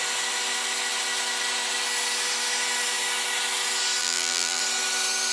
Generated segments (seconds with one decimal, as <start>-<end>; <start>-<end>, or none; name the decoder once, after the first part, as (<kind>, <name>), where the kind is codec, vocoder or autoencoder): 4.0-4.6 (vocoder, BigVGAN v2)